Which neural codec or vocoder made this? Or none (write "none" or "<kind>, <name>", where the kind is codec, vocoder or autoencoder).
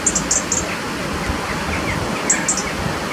none